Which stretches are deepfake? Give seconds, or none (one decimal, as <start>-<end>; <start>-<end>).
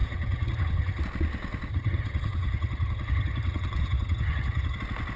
0.0-1.0; 1.7-4.8